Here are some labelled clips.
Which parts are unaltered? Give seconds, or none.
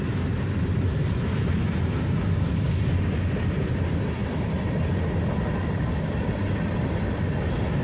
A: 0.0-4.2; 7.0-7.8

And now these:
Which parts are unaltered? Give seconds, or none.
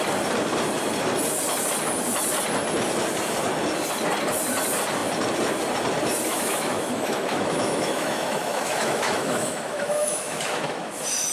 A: 0.0-6.3; 10.9-11.3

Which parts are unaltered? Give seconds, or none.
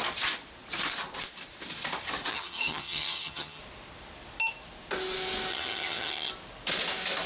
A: 0.0-2.3; 3.6-5.5; 6.3-7.3